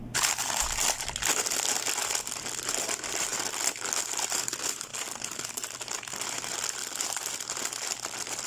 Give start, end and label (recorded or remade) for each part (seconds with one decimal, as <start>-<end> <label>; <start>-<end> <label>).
0.0-8.5 recorded

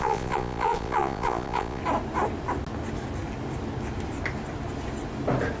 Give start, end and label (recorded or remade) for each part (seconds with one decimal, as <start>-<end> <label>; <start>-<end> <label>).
0.0-1.8 remade; 1.8-5.6 recorded

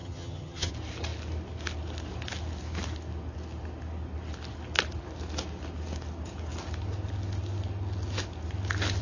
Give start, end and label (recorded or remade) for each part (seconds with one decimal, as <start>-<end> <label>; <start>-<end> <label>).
0.0-0.7 remade; 0.7-9.0 recorded

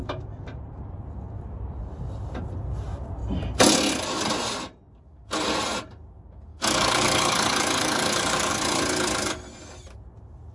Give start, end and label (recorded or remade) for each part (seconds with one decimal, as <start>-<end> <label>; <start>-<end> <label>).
0.0-6.5 recorded; 6.5-8.5 remade; 8.5-10.5 recorded

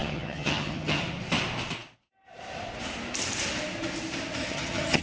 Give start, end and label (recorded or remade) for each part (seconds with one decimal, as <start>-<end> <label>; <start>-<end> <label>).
0.0-1.0 remade; 1.0-4.4 recorded; 4.4-5.0 remade